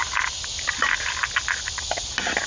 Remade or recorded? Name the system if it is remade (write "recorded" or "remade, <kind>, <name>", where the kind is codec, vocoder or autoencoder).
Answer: recorded